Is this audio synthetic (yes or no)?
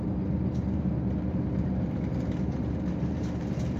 yes